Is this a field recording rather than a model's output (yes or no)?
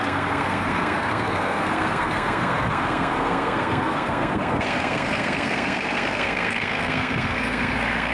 no